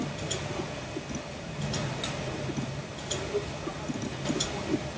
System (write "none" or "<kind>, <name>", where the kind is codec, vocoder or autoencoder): none